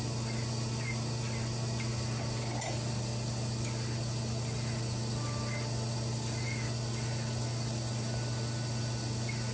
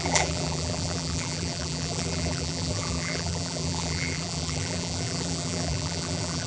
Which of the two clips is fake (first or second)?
second